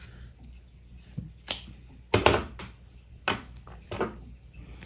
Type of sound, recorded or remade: recorded